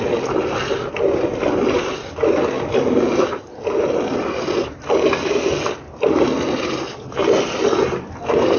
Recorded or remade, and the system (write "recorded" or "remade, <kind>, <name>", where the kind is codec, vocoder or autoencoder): recorded